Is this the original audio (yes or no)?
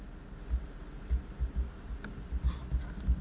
yes